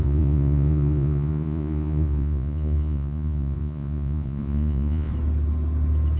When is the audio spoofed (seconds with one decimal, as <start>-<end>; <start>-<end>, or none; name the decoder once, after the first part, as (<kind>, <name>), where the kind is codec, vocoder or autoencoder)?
0.0-5.1 (vocoder, Vocos)